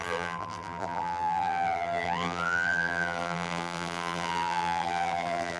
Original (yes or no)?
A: no